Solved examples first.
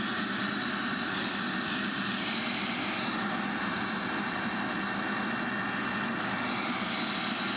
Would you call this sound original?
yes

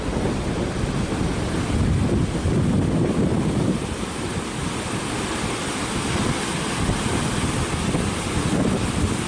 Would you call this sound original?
yes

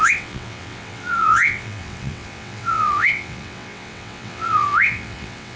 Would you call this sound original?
no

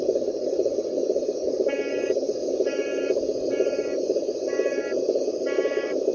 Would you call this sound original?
no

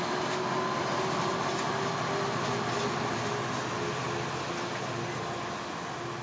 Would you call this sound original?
yes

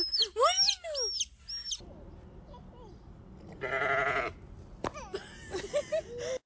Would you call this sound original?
yes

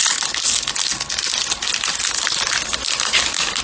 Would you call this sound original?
yes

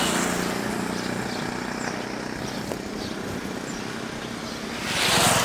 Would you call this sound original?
yes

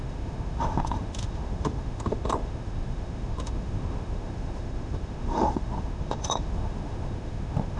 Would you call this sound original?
no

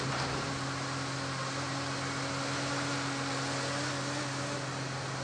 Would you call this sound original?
yes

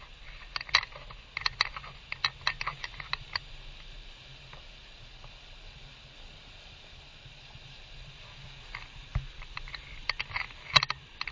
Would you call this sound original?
yes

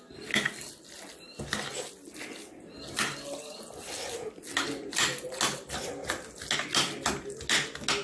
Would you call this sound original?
yes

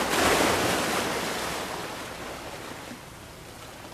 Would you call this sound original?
yes